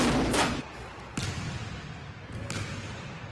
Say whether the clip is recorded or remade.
recorded